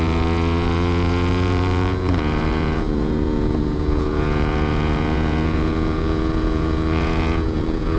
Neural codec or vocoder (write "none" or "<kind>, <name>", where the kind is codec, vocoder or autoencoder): vocoder, Vocos